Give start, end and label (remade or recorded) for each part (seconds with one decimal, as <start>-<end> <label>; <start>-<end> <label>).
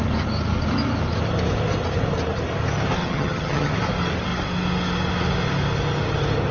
0.0-3.0 recorded; 3.0-3.7 remade; 3.7-6.5 recorded